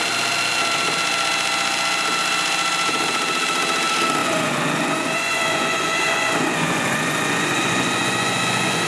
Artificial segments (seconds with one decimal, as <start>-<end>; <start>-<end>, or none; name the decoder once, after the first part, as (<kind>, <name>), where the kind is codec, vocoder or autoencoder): 4.2-8.9 (vocoder, Vocos)